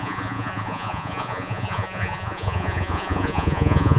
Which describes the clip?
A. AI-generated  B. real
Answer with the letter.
A